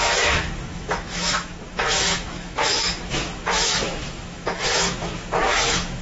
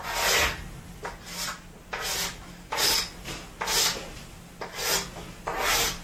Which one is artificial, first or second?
first